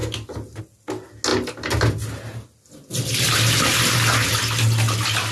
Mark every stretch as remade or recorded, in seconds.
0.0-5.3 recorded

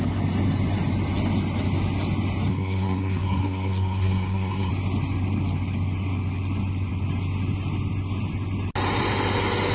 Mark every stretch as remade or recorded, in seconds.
0.0-2.5 recorded; 2.5-4.7 remade; 4.7-9.7 recorded

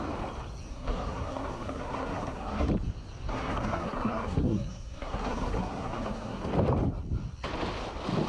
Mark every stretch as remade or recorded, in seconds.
0.0-0.7 recorded; 0.7-2.7 remade; 2.7-3.3 recorded; 3.3-6.4 remade; 6.4-8.3 recorded

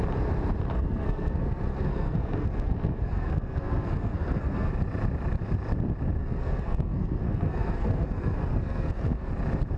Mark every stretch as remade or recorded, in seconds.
0.0-0.7 recorded; 0.7-4.7 remade; 4.7-6.2 recorded; 6.2-9.3 remade; 9.3-9.8 recorded